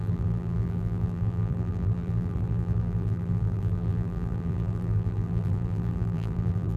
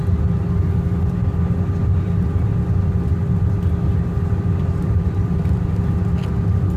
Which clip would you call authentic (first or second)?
second